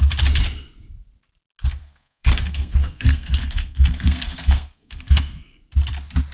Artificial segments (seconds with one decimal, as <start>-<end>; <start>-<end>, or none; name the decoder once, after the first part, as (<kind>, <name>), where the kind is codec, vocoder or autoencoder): 1.8-5.6 (codec, SNAC)